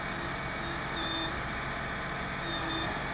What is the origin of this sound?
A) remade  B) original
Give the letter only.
B